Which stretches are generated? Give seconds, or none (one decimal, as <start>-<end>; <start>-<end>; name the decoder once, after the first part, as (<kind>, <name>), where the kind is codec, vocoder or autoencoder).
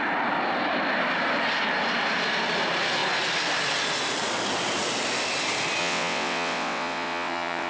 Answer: 5.8-7.7 (vocoder, WaveNeXt)